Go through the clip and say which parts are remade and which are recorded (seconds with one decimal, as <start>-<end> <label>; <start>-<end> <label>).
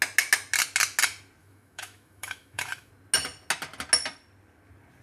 0.0-1.4 recorded; 1.4-2.9 remade; 2.9-5.0 recorded